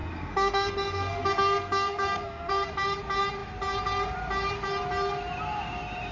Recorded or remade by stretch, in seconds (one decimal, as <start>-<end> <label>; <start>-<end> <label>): 0.0-2.5 remade; 2.5-6.1 recorded